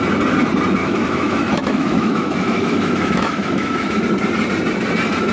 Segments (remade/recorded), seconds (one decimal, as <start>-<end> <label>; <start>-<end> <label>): 0.0-0.8 recorded; 0.8-4.0 remade; 4.0-5.3 recorded